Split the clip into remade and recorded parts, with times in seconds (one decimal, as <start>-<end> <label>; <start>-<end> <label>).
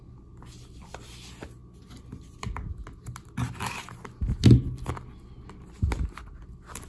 0.0-6.9 recorded